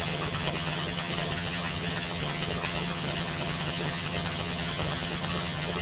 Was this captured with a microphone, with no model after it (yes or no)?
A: no